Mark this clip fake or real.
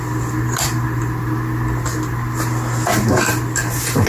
real